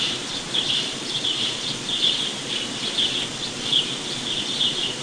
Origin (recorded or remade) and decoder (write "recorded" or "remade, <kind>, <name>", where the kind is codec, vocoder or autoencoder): remade, vocoder, Vocos